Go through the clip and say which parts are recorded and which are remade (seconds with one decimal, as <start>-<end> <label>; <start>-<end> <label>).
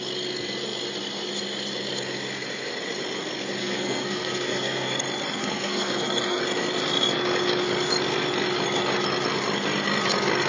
0.0-3.6 recorded; 3.6-5.0 remade; 5.0-5.4 recorded; 5.4-6.4 remade; 6.4-10.5 recorded